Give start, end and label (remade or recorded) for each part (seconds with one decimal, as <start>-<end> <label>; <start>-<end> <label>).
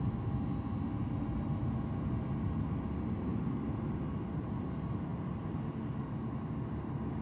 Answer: 0.0-7.2 recorded